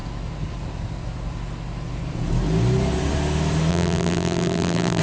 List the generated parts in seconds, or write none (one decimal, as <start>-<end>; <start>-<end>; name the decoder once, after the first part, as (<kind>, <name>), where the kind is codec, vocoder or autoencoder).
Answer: 3.7-5.0 (vocoder, BigVGAN v2)